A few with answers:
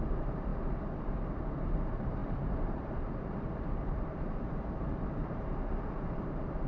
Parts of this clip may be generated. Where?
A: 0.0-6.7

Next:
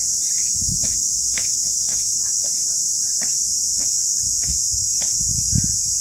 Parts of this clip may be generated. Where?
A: 0.4-2.4; 3.3-5.5

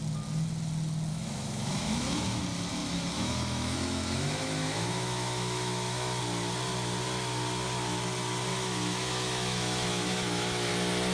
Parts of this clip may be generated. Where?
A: 1.1-2.4; 2.8-6.2; 8.5-10.7

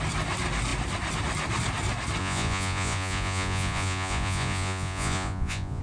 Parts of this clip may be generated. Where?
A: 2.2-5.8

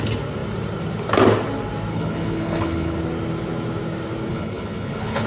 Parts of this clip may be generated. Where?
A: 1.9-3.0; 4.3-5.3